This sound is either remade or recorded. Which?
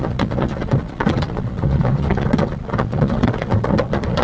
remade